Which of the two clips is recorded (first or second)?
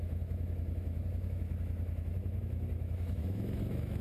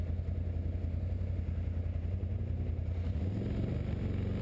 second